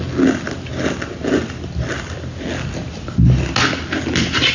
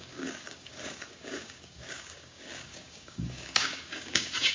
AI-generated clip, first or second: second